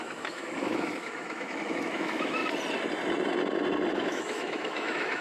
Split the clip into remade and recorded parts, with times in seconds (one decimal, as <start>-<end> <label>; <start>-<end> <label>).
0.0-2.4 remade; 2.4-3.9 recorded; 3.9-5.2 remade

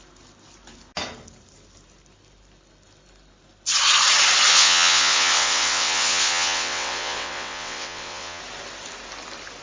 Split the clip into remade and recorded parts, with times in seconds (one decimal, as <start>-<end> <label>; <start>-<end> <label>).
0.0-4.5 recorded; 4.5-8.4 remade; 8.4-9.6 recorded

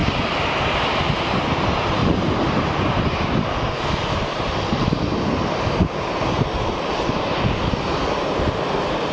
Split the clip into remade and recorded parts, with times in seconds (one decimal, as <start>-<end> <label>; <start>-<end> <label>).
0.0-9.1 recorded

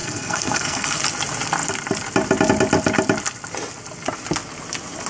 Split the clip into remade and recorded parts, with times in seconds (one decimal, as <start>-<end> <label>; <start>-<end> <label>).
0.0-1.0 remade; 1.0-5.1 recorded

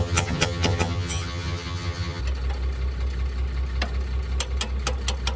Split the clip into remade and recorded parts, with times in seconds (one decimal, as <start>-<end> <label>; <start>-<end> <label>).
0.0-2.2 remade; 2.2-5.4 recorded